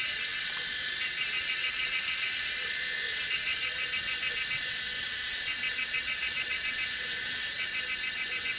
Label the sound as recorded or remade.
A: remade